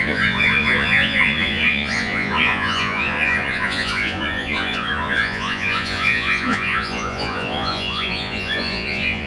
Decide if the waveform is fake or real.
fake